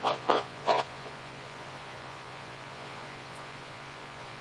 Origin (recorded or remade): remade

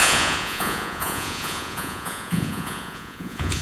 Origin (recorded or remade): remade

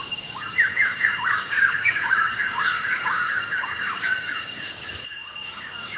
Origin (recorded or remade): remade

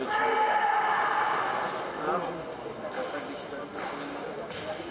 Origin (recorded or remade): recorded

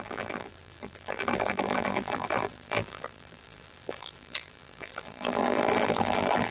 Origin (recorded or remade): remade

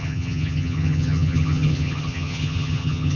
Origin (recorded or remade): remade